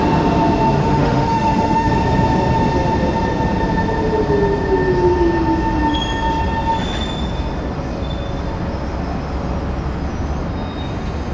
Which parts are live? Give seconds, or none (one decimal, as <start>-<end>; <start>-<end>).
0.0-0.8; 1.9-11.3